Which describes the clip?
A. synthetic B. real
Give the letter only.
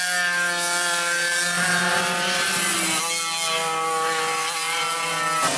B